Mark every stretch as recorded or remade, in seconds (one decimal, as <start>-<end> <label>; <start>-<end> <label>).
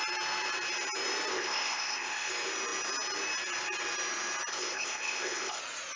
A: 0.0-1.3 recorded; 1.3-2.3 remade; 2.3-4.5 recorded; 4.5-5.6 remade; 5.6-6.0 recorded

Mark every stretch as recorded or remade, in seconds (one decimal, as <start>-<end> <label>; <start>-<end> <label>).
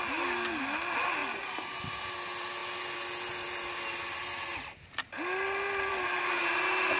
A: 0.0-7.0 recorded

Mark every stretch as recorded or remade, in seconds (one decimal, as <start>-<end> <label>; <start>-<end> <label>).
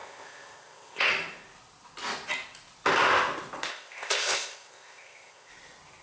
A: 0.0-1.1 remade; 1.1-3.7 recorded; 3.7-5.5 remade; 5.5-6.0 recorded